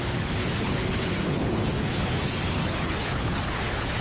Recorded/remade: remade